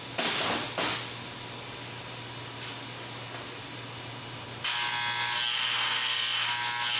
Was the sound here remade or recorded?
recorded